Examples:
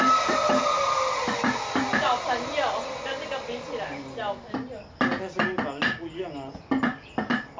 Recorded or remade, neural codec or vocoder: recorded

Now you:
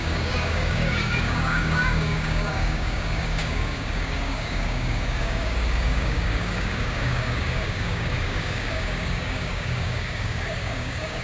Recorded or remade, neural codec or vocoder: remade, codec, DAC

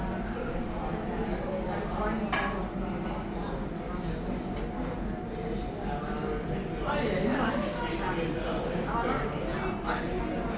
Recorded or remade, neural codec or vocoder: recorded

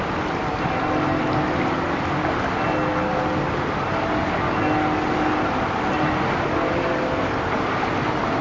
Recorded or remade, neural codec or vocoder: recorded